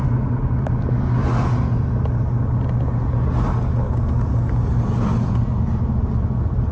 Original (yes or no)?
yes